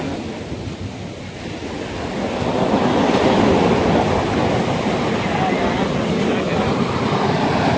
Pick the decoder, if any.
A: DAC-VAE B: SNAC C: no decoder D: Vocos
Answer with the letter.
C